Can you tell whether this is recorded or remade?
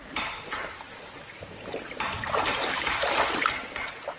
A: remade